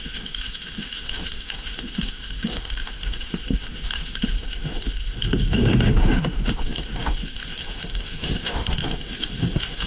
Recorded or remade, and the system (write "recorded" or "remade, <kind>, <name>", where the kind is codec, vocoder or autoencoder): remade, autoencoder, DAC-VAE